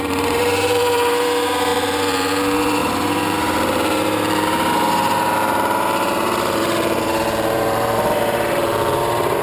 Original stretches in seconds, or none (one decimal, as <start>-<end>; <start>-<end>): none